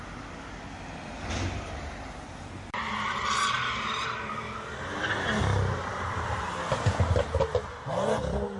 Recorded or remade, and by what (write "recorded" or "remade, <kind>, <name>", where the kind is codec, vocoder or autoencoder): recorded